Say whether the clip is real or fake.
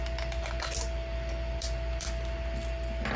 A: real